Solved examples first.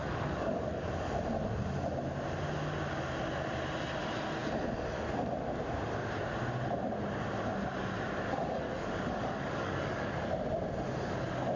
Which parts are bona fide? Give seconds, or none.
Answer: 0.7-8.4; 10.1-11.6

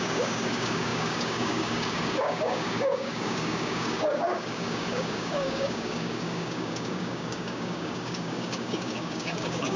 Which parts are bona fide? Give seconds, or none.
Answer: none

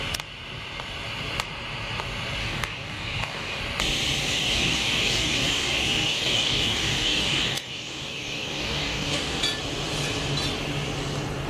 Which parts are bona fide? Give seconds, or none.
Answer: 0.0-2.4; 3.6-4.2; 9.4-11.5

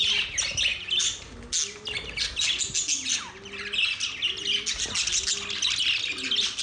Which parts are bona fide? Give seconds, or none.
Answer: 0.0-6.6

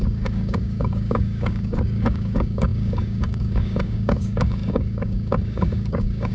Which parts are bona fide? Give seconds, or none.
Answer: none

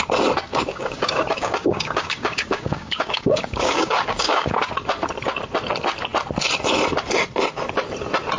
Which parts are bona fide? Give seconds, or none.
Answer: 0.0-0.5; 4.7-8.4